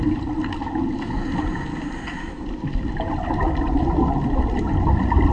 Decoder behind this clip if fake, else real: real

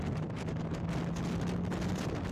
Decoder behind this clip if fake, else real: real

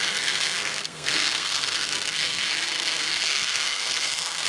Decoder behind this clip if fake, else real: fake, codec, SNAC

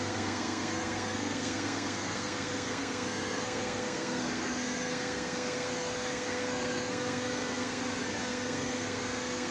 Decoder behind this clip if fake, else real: fake, codec, SNAC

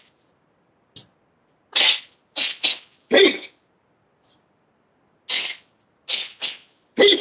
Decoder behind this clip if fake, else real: real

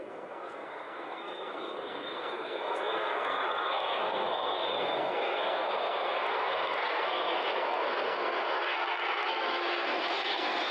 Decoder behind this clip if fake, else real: fake, codec, SNAC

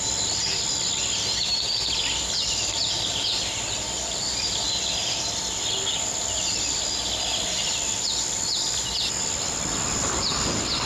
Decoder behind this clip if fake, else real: real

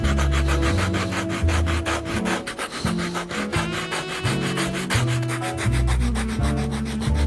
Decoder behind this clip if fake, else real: real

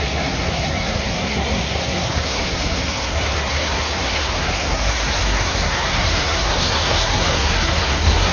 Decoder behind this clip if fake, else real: fake, codec, SNAC